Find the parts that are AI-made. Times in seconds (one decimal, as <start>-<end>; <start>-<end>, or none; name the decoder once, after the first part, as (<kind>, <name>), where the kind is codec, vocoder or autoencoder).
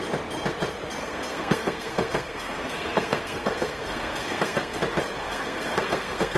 1.0-4.8 (codec, SNAC); 5.2-6.4